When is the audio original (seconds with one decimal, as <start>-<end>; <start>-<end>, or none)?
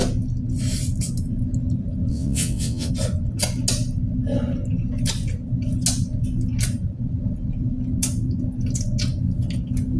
0.0-2.1; 2.9-10.0